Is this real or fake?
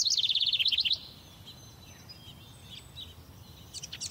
real